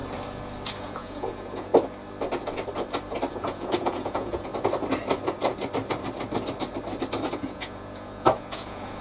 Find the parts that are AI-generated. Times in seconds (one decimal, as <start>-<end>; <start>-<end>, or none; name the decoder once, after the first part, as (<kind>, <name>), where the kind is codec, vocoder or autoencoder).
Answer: 0.8-1.7 (vocoder, Vocos); 3.3-4.5; 7.3-9.0